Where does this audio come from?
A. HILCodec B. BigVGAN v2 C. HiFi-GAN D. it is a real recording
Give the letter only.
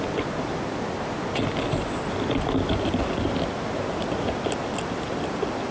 D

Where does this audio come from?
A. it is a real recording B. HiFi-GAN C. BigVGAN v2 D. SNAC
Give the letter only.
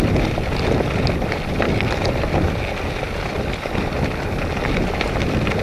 A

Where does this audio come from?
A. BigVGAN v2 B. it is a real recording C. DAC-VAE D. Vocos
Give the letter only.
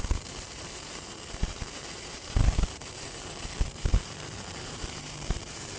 A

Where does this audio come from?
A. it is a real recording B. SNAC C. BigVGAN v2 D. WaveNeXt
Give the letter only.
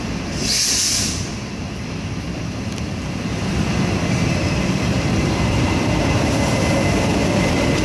C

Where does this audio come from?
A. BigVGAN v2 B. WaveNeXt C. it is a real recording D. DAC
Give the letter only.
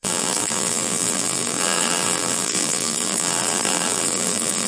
A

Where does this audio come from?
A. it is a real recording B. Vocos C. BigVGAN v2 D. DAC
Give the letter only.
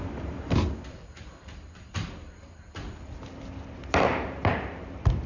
C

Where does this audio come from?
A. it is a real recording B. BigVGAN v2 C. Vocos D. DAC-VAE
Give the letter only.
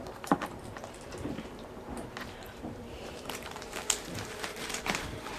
B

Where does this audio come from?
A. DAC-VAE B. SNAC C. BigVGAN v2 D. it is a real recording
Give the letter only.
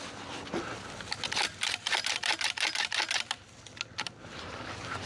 D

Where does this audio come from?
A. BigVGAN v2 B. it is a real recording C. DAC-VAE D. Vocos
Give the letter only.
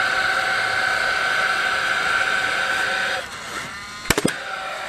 B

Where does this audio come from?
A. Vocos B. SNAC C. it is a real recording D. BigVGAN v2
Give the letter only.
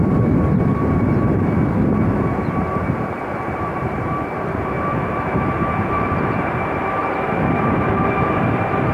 D